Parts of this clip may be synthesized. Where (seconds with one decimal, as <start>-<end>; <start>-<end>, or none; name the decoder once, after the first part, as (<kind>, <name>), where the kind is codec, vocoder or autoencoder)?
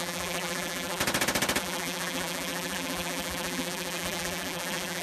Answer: 0.0-1.0 (vocoder, BigVGAN v2); 1.6-5.0